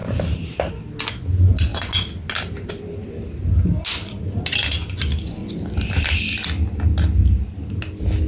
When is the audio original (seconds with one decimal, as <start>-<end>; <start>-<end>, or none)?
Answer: 0.7-8.3